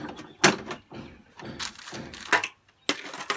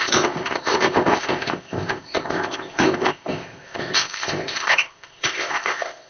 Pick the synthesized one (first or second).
second